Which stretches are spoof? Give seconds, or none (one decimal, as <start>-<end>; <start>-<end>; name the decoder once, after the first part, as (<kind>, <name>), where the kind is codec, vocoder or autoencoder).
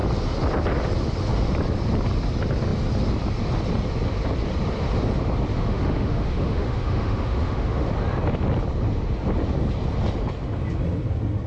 5.5-7.9 (autoencoder, DAC-VAE)